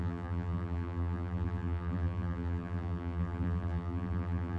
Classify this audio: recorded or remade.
remade